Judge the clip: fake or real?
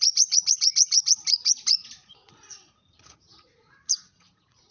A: fake